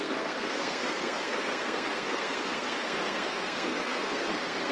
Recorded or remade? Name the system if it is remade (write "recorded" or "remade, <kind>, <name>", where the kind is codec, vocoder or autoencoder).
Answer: remade, codec, SNAC